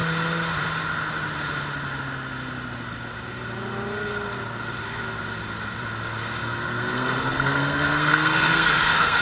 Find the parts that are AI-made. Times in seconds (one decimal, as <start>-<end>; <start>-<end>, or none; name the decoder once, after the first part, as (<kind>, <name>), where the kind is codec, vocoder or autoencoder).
6.4-9.2 (codec, SNAC)